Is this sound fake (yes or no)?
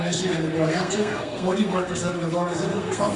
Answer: yes